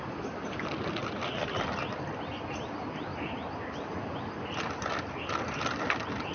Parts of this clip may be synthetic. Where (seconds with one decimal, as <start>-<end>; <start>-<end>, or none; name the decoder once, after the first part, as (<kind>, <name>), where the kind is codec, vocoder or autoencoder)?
none